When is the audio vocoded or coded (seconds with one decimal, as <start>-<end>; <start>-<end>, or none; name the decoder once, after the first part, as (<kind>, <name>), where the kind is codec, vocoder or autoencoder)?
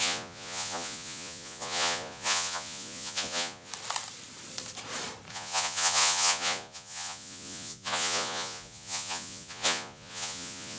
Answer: 0.0-3.7 (vocoder, Vocos); 5.3-10.8